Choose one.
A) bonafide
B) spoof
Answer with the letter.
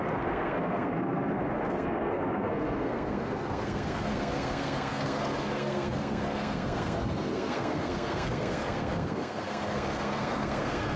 B